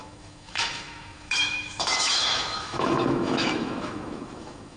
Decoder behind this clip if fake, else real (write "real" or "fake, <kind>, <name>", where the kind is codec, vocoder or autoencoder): fake, autoencoder, DAC-VAE